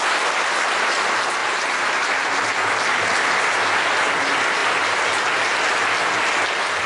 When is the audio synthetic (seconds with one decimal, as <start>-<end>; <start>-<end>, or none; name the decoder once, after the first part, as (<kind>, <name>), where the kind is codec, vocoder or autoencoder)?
1.4-2.5 (vocoder, BigVGAN v2); 4.6-5.2